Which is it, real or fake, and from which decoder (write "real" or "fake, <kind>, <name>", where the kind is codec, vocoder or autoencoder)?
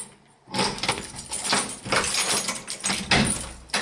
real